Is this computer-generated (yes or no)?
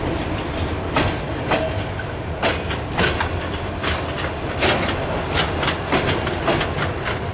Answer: no